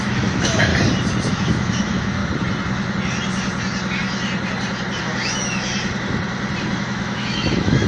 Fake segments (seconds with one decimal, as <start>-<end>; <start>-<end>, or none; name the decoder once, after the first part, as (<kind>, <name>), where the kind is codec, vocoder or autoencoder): 0.0-0.7 (autoencoder, DAC-VAE); 1.3-2.2; 5.0-5.7; 6.8-7.9